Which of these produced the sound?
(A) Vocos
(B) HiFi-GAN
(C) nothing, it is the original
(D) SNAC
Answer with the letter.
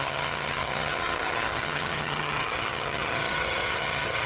B